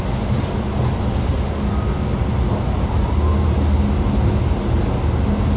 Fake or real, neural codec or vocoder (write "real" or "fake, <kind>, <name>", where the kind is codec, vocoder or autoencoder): real